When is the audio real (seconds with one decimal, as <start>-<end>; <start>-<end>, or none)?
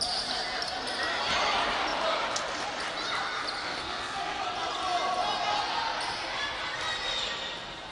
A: 0.0-3.6; 4.4-7.9